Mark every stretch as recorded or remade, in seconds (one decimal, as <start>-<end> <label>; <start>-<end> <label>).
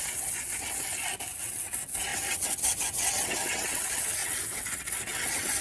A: 0.0-0.9 remade; 0.9-1.4 recorded; 1.4-5.6 remade